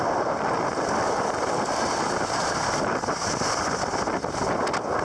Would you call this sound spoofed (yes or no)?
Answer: no